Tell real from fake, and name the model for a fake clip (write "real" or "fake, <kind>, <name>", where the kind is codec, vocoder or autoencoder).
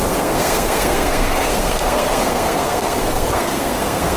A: fake, codec, SNAC